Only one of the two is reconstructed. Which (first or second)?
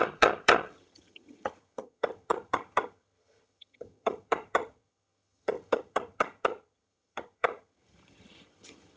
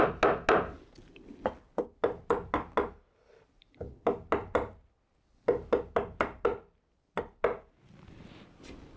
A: first